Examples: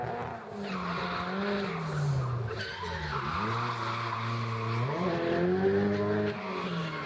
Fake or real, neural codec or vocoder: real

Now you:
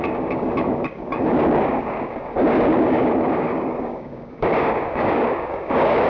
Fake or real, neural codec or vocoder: fake, codec, DAC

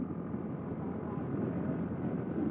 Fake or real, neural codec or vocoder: real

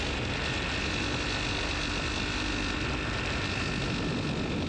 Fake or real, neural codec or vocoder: real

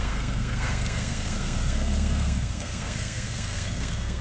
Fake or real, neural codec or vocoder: fake, codec, SNAC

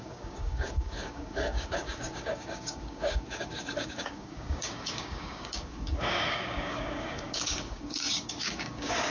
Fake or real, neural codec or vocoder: fake, codec, DAC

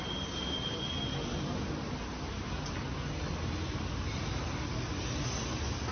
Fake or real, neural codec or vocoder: real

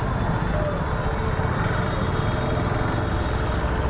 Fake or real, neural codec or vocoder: real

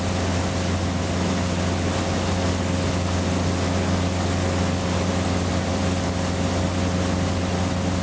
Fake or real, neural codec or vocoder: real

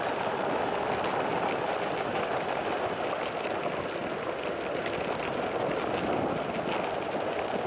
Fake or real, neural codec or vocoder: real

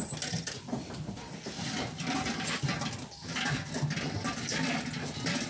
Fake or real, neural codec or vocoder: real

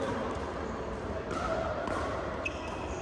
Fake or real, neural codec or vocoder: fake, vocoder, BigVGAN v2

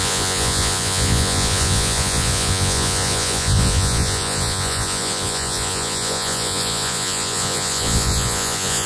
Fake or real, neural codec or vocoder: fake, vocoder, Vocos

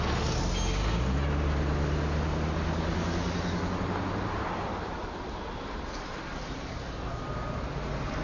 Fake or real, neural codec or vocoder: real